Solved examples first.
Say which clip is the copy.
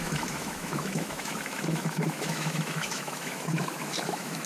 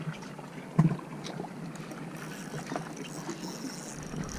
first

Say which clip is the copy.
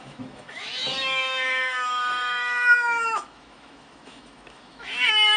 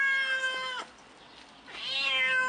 first